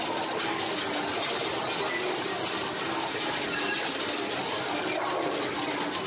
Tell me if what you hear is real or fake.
real